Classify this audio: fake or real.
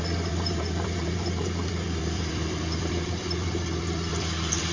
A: fake